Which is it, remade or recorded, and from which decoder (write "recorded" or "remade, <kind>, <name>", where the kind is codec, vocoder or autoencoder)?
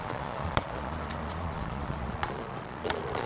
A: remade, vocoder, Vocos